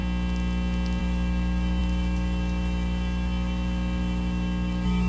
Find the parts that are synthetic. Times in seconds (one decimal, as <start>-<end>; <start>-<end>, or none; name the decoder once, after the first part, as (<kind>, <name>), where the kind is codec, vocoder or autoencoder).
1.0-5.1 (autoencoder, DAC-VAE)